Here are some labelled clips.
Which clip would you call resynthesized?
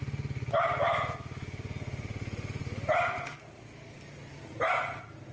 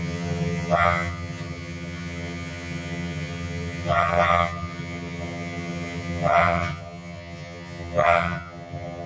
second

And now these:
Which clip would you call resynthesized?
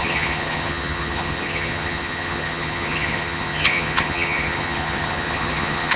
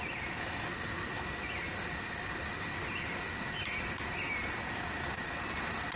first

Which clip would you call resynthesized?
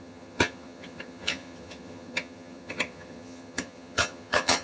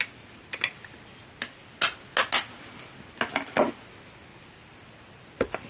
first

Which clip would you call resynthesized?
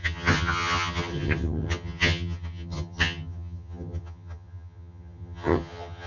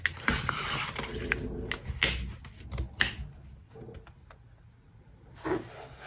first